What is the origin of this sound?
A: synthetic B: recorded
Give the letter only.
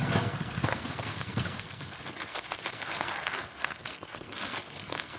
A